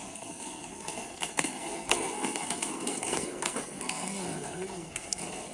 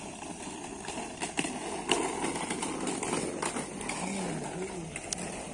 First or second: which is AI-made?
first